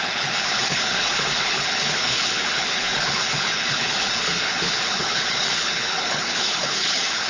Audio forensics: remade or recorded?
remade